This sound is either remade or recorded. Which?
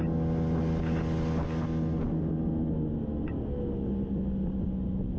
recorded